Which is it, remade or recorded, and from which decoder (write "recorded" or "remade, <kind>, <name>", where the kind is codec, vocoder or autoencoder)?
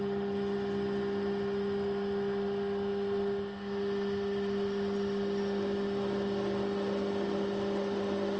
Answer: recorded